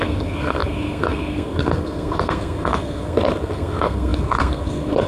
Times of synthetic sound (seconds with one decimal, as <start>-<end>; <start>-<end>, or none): 0.0-5.1